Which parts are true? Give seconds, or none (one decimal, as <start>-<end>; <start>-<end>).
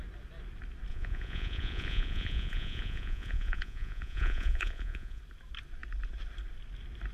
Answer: 0.0-0.9; 5.2-7.1